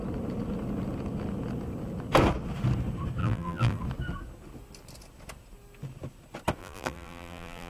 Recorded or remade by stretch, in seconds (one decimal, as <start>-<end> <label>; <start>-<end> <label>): 0.0-3.2 recorded; 3.2-3.8 remade; 3.8-6.6 recorded; 6.6-7.7 remade